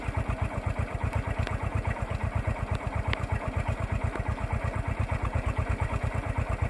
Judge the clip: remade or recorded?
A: recorded